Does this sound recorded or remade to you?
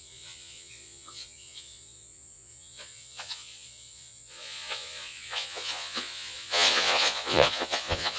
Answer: remade